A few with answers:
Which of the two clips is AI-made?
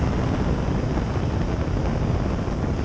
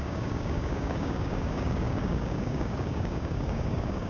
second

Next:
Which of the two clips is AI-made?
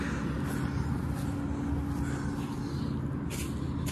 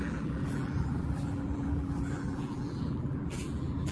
second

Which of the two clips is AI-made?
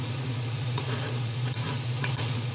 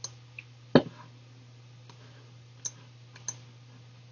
first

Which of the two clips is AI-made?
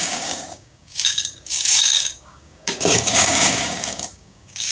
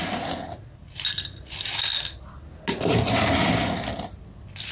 first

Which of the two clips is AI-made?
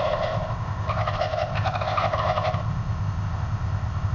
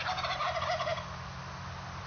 first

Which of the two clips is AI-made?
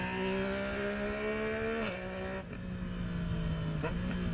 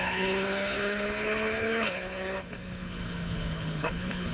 second